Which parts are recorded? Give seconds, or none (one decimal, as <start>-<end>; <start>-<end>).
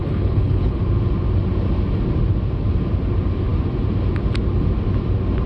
0.8-5.5